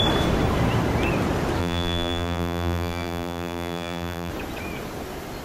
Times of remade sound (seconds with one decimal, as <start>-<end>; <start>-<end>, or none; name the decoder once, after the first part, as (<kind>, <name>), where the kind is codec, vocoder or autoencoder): 1.6-4.3 (vocoder, BigVGAN v2)